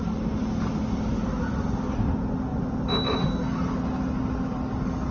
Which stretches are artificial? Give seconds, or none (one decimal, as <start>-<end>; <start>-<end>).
none